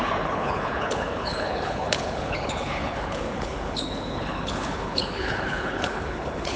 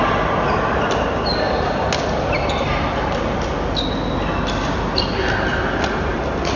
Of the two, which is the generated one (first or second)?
first